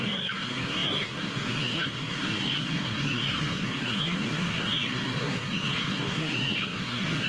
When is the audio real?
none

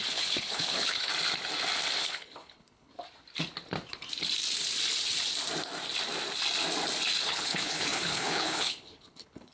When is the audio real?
1.1-2.0; 2.9-7.2

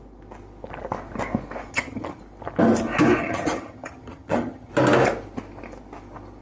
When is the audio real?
0.0-1.7; 2.2-3.2; 4.7-6.4

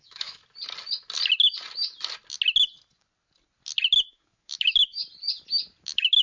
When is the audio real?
0.4-4.1; 5.0-5.8

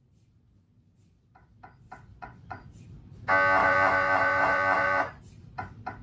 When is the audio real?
0.0-2.1; 2.7-3.6; 5.2-6.0

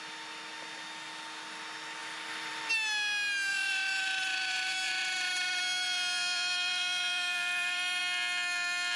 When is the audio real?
0.0-2.0; 2.7-3.5; 8.0-9.0

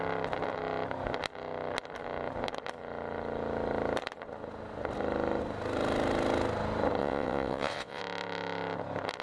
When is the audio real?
0.0-7.0; 8.0-9.2